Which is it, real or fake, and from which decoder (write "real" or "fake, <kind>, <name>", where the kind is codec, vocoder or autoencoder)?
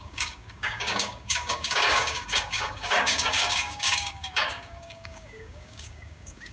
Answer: fake, codec, DAC